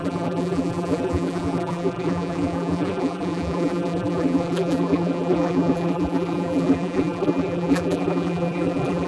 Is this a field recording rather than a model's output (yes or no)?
no